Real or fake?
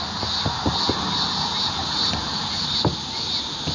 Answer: real